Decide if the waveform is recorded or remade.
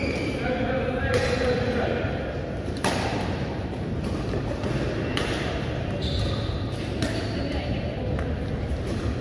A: remade